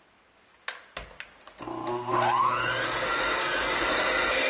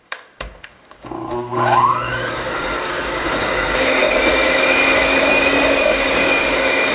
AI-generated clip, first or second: second